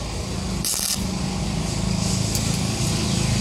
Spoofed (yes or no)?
no